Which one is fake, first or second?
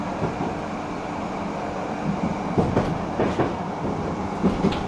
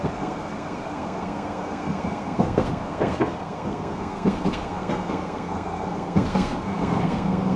second